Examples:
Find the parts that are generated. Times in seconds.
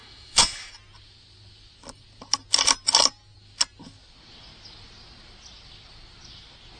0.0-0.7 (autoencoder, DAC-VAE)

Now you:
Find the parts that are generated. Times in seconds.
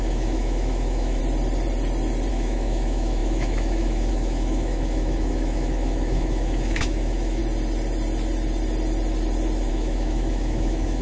0.0-1.2 (autoencoder, DAC-VAE); 2.3-7.4; 9.7-11.0